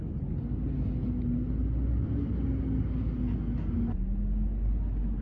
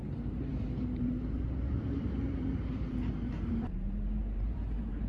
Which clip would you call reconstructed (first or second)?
second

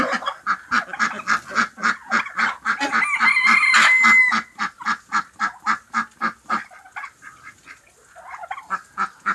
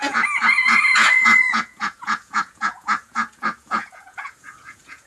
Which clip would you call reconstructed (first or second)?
second